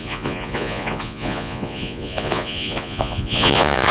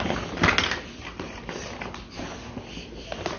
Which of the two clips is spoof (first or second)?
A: first